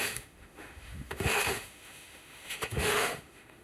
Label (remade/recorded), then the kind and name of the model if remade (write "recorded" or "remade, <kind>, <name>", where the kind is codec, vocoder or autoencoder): remade, autoencoder, DAC-VAE